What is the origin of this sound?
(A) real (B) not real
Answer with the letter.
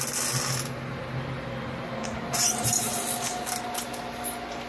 A